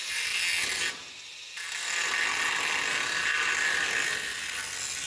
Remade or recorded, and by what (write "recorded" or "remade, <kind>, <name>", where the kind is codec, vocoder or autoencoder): recorded